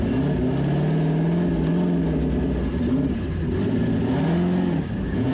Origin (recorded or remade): recorded